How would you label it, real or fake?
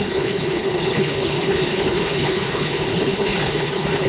fake